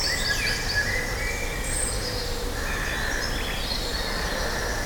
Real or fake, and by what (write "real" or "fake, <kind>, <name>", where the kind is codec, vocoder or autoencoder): real